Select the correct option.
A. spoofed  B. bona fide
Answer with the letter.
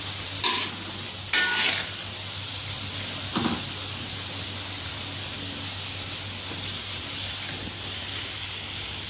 B